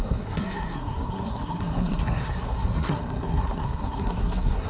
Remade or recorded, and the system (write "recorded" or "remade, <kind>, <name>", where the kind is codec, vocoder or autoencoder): remade, codec, SNAC